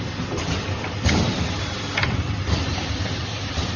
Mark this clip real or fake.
fake